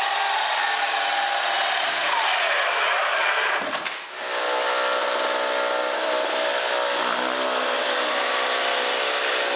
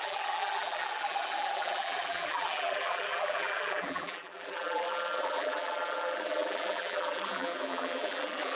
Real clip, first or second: first